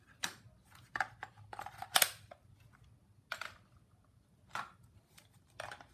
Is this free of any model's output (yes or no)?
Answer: yes